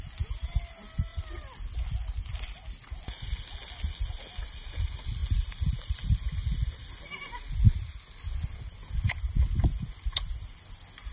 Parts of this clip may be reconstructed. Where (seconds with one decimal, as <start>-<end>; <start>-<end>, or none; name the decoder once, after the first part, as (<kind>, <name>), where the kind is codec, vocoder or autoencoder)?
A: none